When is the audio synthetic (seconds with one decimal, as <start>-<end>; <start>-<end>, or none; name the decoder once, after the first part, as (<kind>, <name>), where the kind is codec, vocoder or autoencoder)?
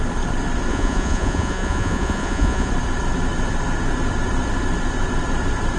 0.7-2.7 (vocoder, Vocos)